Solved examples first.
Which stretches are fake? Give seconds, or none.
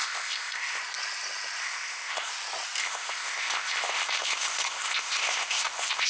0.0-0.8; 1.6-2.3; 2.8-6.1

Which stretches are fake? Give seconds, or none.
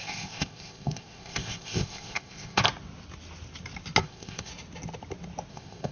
0.0-2.6; 4.0-4.5; 5.5-5.9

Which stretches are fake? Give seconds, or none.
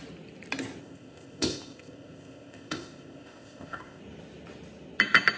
0.8-4.0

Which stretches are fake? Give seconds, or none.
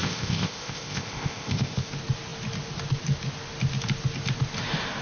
0.0-1.9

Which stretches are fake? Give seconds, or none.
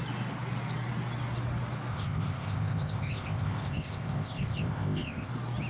1.9-5.3